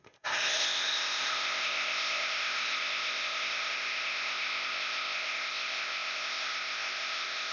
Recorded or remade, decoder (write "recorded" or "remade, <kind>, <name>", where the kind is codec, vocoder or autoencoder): remade, codec, ZipCodec